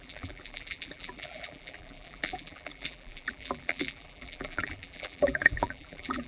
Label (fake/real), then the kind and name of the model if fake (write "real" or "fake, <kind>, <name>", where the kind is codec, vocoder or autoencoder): fake, vocoder, BigVGAN v2